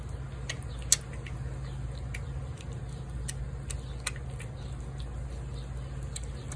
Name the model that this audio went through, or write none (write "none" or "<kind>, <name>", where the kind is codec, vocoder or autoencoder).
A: none